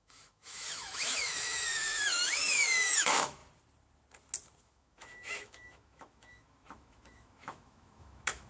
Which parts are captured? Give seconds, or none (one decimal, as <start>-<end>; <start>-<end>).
3.4-4.6